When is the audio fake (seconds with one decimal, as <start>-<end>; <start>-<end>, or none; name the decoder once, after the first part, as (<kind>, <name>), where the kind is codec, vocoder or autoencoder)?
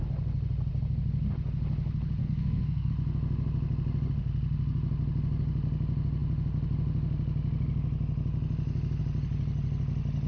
2.2-2.9 (codec, SNAC)